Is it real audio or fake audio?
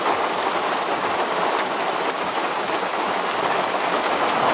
real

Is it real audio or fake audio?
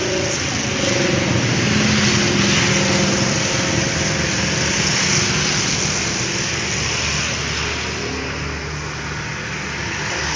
real